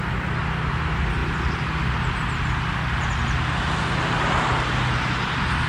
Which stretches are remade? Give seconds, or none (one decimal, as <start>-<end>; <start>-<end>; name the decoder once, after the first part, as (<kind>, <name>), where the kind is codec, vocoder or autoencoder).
none